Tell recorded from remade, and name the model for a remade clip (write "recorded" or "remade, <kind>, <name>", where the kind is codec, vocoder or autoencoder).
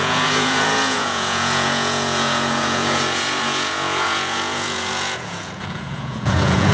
remade, vocoder, Vocos